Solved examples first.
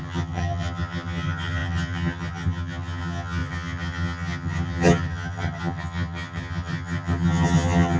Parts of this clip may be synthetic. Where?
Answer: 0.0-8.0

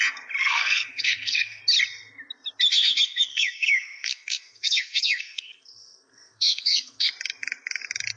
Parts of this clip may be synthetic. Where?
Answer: 0.4-1.6; 2.7-7.1

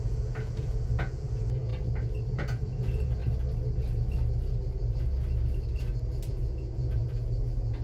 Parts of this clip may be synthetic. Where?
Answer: 0.0-1.7; 2.3-3.2; 6.3-7.8

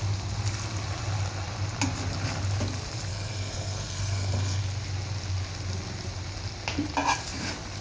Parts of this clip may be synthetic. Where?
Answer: 3.1-4.6